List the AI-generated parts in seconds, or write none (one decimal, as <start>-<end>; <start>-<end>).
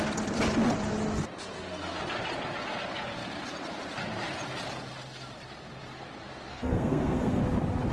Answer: 6.5-7.4